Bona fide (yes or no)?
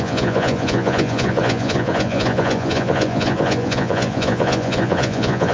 no